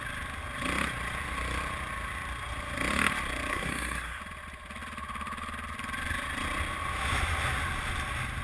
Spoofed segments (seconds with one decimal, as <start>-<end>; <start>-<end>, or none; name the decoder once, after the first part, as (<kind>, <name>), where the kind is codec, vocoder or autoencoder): 3.5-4.2 (codec, SNAC)